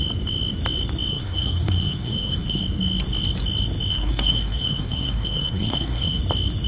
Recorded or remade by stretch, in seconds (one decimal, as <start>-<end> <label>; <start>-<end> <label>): 0.0-1.1 recorded; 1.1-2.6 remade; 2.6-3.9 recorded; 3.9-6.2 remade; 6.2-6.7 recorded